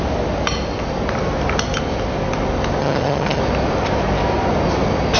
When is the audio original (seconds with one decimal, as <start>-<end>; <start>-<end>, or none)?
0.0-2.8; 3.4-5.2